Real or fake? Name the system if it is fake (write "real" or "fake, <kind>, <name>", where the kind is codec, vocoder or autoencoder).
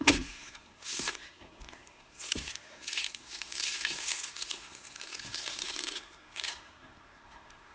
fake, codec, SNAC